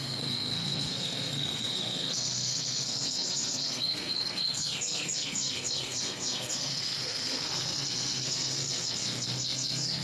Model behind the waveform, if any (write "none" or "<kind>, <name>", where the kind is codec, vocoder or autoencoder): codec, SNAC